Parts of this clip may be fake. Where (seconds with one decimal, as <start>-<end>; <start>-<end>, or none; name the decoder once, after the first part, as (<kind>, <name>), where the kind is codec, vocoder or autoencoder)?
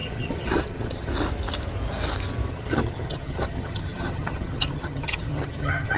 0.0-1.1 (vocoder, HiFi-GAN); 2.5-6.0